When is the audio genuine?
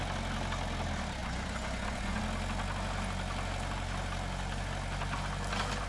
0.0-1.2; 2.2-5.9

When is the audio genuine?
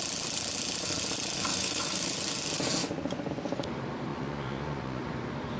0.0-1.5; 2.1-2.8; 3.3-4.1; 5.1-5.6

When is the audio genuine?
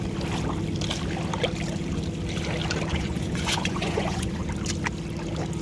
0.0-2.9; 4.5-5.6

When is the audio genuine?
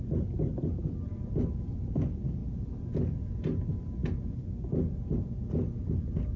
0.0-6.4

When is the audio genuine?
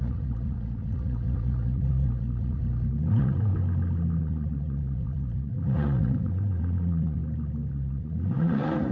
2.6-3.1; 3.5-4.2; 7.2-7.7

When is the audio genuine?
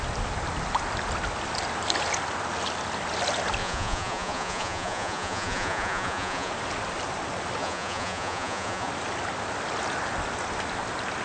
0.0-3.6; 6.5-7.6; 8.9-11.2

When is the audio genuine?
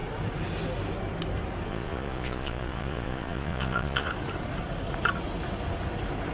0.0-1.7; 4.1-6.3